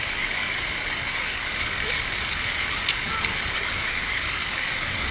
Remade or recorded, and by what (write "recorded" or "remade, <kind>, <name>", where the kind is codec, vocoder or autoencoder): remade, codec, DAC